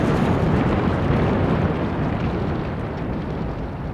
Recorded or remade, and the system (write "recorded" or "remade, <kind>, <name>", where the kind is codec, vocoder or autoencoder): recorded